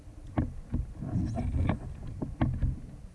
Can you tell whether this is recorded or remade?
recorded